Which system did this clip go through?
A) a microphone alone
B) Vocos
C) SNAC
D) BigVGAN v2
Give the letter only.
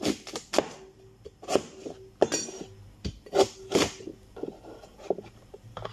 D